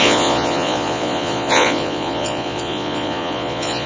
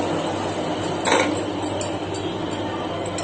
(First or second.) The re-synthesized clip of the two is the first